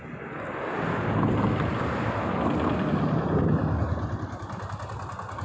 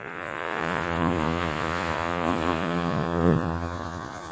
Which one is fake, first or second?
second